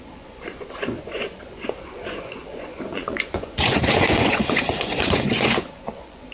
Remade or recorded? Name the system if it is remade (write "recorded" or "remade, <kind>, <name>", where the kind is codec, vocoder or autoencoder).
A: remade, vocoder, Vocos